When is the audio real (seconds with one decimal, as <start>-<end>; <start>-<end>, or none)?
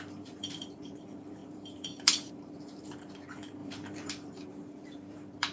none